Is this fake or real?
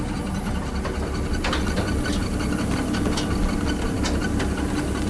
real